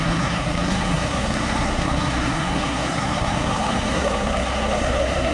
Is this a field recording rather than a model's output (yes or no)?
no